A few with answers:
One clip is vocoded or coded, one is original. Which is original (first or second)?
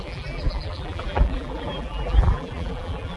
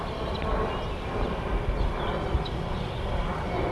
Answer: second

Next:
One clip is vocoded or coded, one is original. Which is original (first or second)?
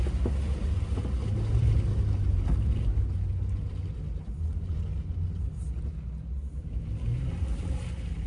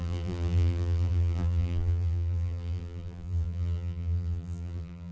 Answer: first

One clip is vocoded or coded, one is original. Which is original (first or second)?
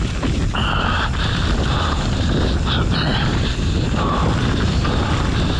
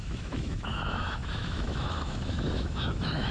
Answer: first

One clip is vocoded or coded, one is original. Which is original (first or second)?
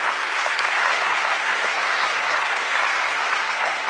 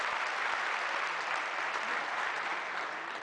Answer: second